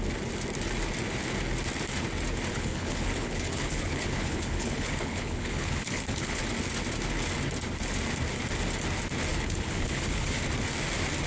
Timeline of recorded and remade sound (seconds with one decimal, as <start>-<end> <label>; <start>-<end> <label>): 0.0-2.5 recorded; 2.5-6.4 remade; 6.4-9.3 recorded; 9.3-10.4 remade; 10.4-11.3 recorded